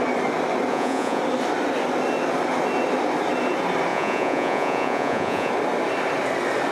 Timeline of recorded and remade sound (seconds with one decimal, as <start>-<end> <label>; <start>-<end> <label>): 0.0-0.7 recorded; 0.7-1.2 remade; 1.2-3.9 recorded; 3.9-5.5 remade; 5.5-6.7 recorded